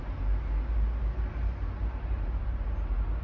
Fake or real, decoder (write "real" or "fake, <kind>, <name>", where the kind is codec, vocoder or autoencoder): real